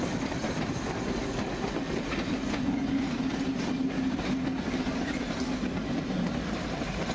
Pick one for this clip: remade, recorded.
recorded